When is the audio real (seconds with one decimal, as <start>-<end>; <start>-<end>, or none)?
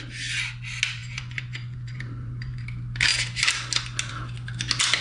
0.0-1.0; 2.6-5.0